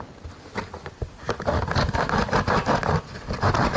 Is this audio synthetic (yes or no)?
no